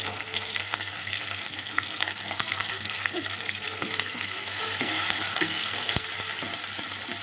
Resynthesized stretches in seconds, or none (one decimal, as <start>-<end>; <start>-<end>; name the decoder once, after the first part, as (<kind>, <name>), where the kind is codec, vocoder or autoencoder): 0.0-6.1 (codec, SNAC)